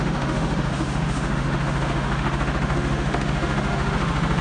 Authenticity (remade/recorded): remade